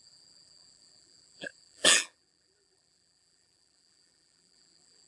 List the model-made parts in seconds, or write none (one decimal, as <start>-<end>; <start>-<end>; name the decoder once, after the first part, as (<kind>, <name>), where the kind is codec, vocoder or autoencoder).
0.0-5.1 (vocoder, BigVGAN v2)